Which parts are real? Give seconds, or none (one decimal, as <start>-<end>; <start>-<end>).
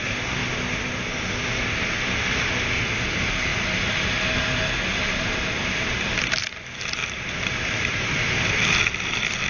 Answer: 0.0-4.9; 6.4-7.0